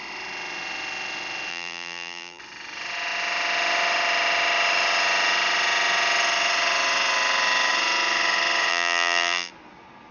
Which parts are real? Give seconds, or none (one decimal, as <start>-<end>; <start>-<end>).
0.0-1.5; 2.4-8.7; 9.5-10.1